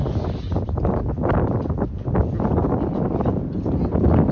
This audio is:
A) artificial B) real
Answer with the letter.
B